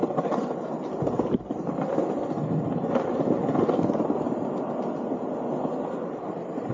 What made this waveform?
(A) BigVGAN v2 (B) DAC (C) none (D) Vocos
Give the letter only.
C